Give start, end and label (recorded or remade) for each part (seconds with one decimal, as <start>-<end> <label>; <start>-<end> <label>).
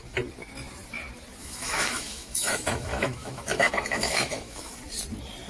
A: 0.0-1.4 recorded; 1.4-4.7 remade; 4.7-5.5 recorded